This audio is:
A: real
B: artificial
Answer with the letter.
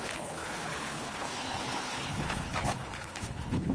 B